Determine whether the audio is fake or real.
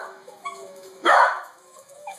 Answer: fake